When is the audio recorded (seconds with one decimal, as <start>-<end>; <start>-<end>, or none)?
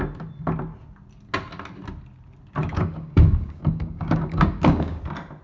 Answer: 0.0-2.6; 5.0-5.4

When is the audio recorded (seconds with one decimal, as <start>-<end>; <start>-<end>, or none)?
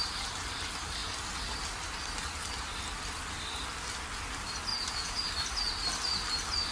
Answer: 0.0-4.7; 5.3-6.7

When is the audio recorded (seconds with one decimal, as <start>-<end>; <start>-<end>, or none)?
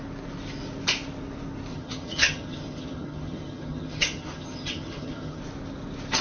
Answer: 0.0-1.7; 5.4-6.2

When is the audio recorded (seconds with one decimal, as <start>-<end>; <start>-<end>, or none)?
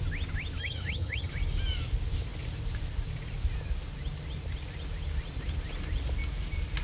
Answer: 0.0-0.6; 1.3-6.8